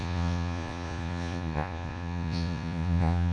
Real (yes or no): no